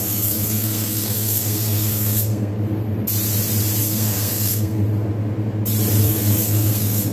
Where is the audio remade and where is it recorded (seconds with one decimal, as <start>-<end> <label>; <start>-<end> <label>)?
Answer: 0.0-2.5 remade; 2.5-3.8 recorded; 3.8-4.8 remade; 4.8-6.0 recorded; 6.0-7.1 remade